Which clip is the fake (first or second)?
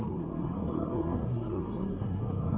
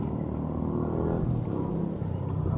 first